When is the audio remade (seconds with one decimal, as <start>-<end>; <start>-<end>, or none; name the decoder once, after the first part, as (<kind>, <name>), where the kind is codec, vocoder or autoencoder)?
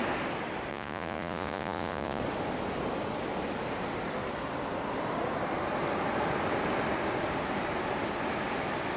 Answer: 0.7-2.2 (vocoder, Vocos)